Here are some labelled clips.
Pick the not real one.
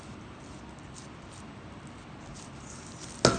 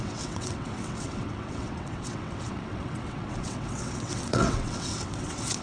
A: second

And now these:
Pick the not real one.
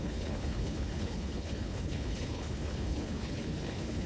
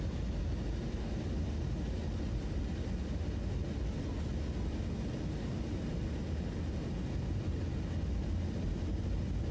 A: first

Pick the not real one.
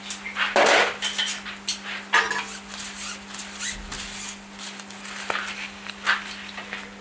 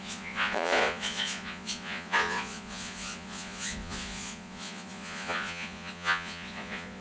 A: second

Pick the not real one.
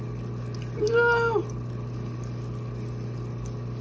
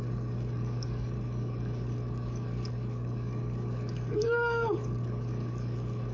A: second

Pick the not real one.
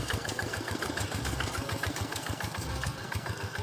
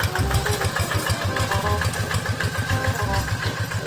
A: first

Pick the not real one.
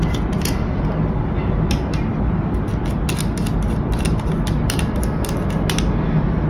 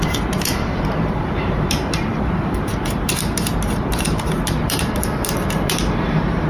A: second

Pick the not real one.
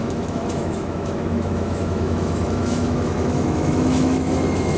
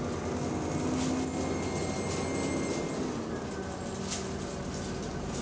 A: first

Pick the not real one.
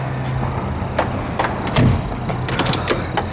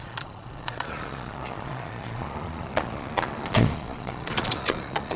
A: second